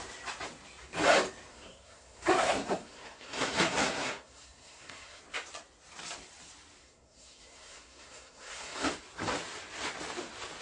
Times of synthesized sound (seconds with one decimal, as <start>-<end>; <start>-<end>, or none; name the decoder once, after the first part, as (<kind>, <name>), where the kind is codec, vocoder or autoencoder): 1.5-5.2 (codec, SNAC); 6.8-8.9